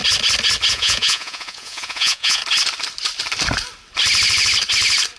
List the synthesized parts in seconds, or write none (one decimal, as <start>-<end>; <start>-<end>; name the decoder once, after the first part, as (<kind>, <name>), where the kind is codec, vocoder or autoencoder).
0.7-2.4 (vocoder, Vocos)